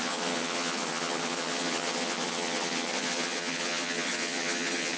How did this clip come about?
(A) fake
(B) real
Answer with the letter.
A